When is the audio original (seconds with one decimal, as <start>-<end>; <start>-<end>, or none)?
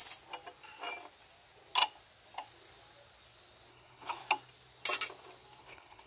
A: 0.0-3.7; 4.2-5.6